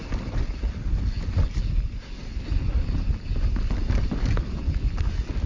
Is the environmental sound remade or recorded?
recorded